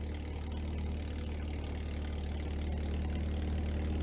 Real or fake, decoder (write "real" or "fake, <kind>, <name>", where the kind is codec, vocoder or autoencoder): real